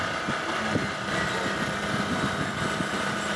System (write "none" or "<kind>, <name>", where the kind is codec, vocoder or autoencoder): none